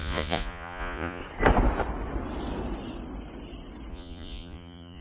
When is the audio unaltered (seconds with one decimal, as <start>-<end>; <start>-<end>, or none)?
1.2-3.9